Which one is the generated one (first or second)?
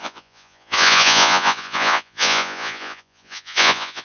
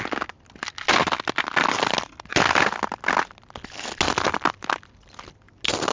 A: first